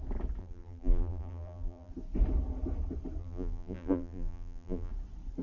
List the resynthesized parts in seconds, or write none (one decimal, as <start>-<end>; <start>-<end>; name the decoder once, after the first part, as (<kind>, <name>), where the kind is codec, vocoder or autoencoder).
0.4-1.9 (vocoder, BigVGAN v2); 3.2-4.9